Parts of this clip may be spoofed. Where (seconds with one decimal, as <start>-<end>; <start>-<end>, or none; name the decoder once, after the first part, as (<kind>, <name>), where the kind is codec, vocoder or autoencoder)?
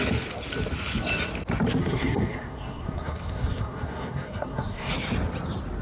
1.8-4.9 (codec, SNAC)